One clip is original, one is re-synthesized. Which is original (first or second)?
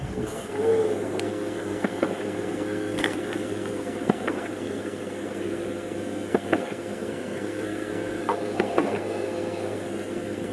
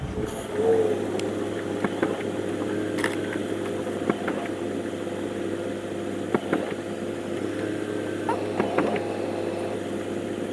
second